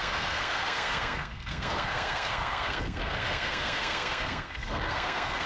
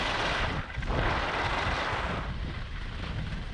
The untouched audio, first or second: second